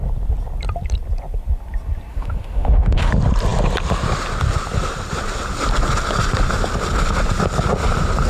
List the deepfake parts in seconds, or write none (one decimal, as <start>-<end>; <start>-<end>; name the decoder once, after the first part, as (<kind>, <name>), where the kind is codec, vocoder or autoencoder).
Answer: 2.1-3.1 (autoencoder, DAC-VAE)